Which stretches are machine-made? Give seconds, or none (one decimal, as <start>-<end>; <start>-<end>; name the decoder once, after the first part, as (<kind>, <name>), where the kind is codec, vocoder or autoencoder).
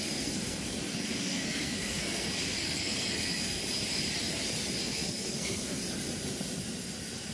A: 0.0-3.6 (codec, SNAC); 4.8-5.8